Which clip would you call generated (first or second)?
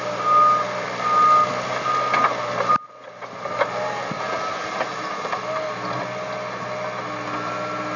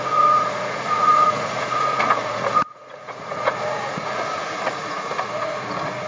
second